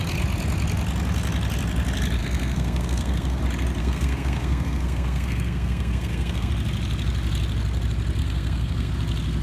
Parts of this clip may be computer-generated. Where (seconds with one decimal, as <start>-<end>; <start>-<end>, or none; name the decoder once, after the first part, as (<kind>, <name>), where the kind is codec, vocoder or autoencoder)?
2.2-3.4 (codec, SNAC); 3.8-6.5; 8.2-8.9